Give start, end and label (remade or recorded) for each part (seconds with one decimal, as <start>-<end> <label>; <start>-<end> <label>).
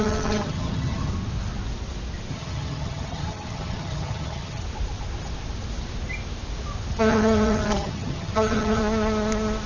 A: 0.0-1.1 remade; 1.1-2.3 recorded; 2.3-4.6 remade; 4.6-7.0 recorded; 7.0-8.8 remade; 8.8-9.7 recorded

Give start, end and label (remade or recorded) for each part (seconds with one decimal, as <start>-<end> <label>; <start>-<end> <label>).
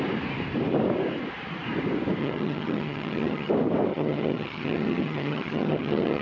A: 0.0-2.2 recorded; 2.2-3.5 remade; 3.5-3.9 recorded; 3.9-6.2 remade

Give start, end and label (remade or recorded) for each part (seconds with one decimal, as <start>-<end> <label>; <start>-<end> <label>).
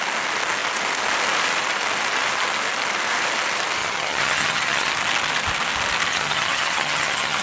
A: 0.0-3.8 recorded; 3.8-4.9 remade; 4.9-6.1 recorded; 6.1-7.4 remade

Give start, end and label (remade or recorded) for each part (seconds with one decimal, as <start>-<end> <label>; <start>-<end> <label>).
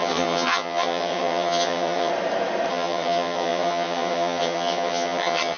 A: 0.0-2.1 remade; 2.1-2.7 recorded; 2.7-5.6 remade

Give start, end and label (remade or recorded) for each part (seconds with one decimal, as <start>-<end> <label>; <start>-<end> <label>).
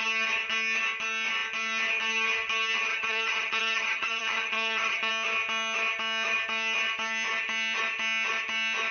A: 0.0-2.9 recorded; 2.9-5.1 remade; 5.1-8.9 recorded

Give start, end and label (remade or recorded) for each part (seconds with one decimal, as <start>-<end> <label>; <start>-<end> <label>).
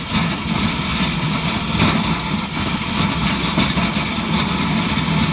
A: 0.0-5.3 recorded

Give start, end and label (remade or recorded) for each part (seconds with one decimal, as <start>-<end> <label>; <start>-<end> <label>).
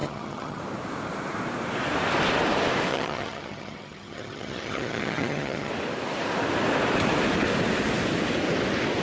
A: 0.0-0.6 remade; 0.6-2.9 recorded; 2.9-5.7 remade; 5.7-9.0 recorded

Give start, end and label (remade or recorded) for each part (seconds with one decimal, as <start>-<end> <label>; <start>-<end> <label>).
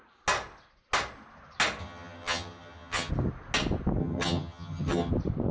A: 0.0-1.8 recorded; 1.8-3.1 remade; 3.1-4.0 recorded; 4.0-5.1 remade; 5.1-5.5 recorded